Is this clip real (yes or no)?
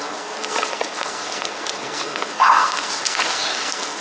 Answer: no